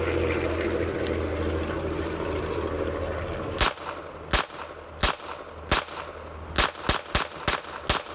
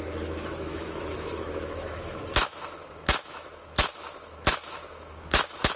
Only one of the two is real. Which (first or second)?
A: first